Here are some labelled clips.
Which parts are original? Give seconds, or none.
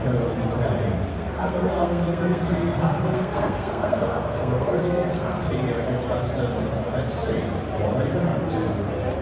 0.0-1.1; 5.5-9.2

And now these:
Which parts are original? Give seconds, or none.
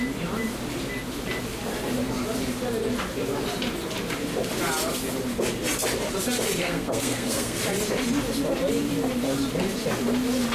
0.0-6.6; 7.6-10.5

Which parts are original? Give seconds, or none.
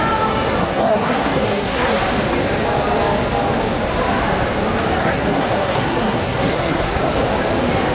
0.0-0.6; 2.0-5.0; 7.0-7.9